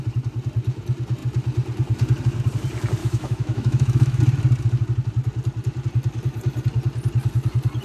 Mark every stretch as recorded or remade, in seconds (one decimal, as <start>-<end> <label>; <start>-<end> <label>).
0.0-3.0 recorded; 3.0-4.2 remade; 4.2-7.8 recorded